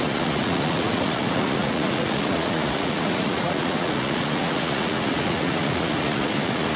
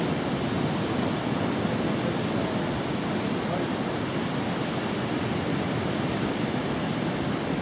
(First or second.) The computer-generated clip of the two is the first